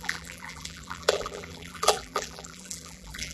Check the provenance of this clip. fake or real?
fake